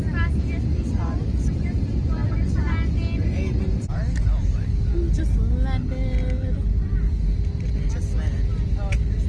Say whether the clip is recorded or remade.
recorded